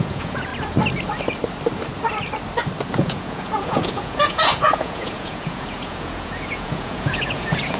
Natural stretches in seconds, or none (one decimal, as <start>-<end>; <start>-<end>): 0.5-2.9